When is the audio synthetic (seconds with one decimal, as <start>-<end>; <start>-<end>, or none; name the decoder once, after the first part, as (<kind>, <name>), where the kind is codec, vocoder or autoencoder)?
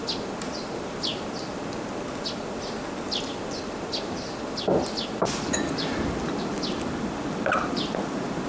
none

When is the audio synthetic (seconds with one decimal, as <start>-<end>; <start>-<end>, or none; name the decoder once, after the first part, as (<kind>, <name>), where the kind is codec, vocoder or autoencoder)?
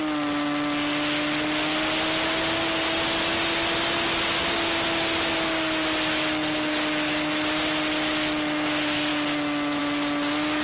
none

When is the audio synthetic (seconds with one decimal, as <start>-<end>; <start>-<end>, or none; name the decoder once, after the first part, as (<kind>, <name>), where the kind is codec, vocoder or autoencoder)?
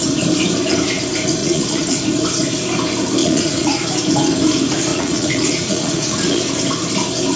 1.4-2.0 (vocoder, Vocos); 3.2-3.9; 4.9-6.4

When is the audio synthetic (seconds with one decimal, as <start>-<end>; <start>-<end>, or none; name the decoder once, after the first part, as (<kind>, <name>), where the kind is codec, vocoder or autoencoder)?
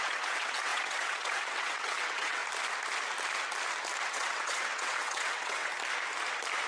0.0-2.4 (vocoder, WaveNeXt); 4.1-5.7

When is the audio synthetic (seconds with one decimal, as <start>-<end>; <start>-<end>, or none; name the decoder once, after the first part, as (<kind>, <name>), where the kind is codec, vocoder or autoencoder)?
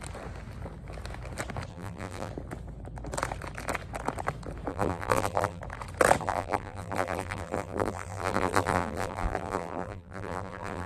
1.7-2.3 (vocoder, BigVGAN v2); 4.7-5.6; 6.2-10.9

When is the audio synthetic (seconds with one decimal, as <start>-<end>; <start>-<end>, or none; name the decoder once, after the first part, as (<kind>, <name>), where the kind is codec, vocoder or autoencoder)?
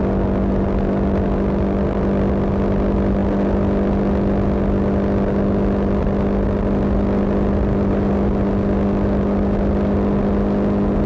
none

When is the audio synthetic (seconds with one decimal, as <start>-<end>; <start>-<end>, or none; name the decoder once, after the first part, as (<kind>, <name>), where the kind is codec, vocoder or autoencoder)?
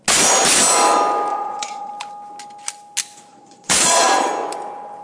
1.3-1.9 (vocoder, Vocos); 3.3-4.3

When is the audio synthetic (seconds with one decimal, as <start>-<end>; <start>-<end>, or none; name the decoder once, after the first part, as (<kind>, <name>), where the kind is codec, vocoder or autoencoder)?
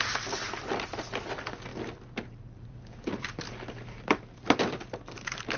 0.0-1.7 (vocoder, BigVGAN v2); 2.3-5.6